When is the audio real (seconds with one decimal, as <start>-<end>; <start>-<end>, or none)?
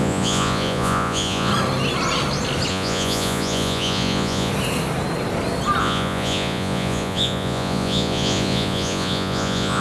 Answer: 1.5-2.7; 4.5-5.8